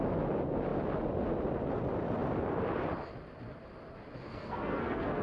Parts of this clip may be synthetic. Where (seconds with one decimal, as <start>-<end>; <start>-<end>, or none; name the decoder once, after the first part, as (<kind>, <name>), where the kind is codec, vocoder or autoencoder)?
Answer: 4.3-5.2 (codec, SNAC)